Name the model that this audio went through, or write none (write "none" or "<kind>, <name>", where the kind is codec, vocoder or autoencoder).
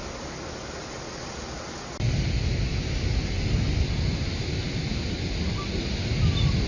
none